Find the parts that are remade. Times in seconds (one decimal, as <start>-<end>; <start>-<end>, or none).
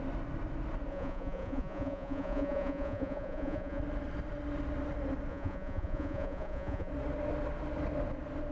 0.9-3.8; 5.3-6.9